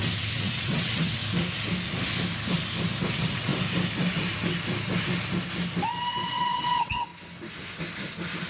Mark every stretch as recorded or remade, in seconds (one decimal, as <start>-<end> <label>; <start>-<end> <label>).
0.0-1.2 remade; 1.2-3.1 recorded; 3.1-3.5 remade; 3.5-6.1 recorded; 6.1-7.1 remade; 7.1-8.5 recorded